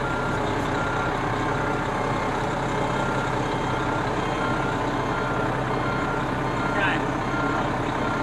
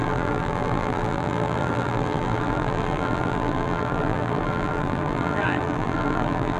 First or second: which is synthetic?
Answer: second